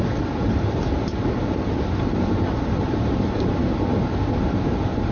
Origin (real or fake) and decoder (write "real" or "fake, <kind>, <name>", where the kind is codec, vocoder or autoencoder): fake, vocoder, BigVGAN v2